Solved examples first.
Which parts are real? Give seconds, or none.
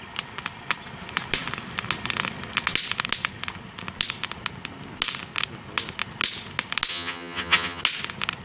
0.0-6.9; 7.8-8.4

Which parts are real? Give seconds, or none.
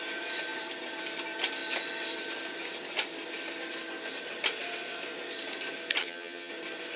0.0-6.0; 6.5-7.0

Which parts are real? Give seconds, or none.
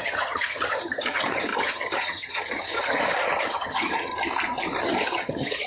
4.1-4.8